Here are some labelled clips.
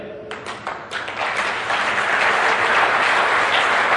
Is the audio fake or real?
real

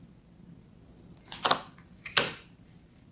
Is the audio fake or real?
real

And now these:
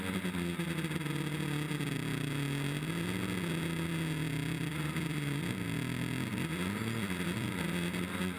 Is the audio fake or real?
real